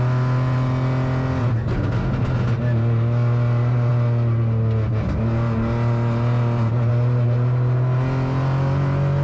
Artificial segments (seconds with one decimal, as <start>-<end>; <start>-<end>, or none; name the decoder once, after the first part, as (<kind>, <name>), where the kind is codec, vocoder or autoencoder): none